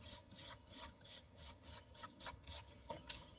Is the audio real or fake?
fake